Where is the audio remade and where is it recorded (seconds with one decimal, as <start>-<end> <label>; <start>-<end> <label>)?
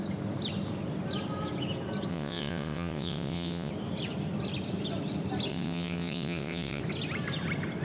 0.0-2.1 recorded; 2.1-3.7 remade; 3.7-5.5 recorded; 5.5-6.8 remade; 6.8-7.8 recorded